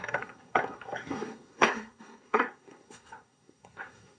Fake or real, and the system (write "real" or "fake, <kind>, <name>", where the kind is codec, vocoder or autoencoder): fake, codec, SNAC